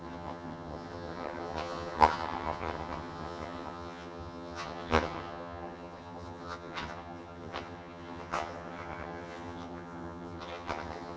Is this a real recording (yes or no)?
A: no